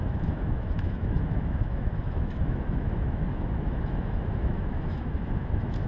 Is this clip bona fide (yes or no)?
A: no